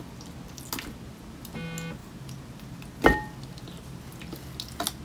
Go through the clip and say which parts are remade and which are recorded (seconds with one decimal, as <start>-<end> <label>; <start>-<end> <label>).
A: 0.0-2.0 recorded; 2.0-4.0 remade; 4.0-5.0 recorded